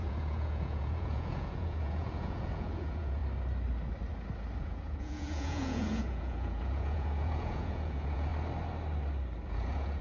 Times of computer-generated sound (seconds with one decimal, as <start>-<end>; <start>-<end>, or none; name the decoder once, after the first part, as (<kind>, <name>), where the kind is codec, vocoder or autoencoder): 0.0-3.2 (vocoder, Vocos); 4.6-8.3; 9.5-10.0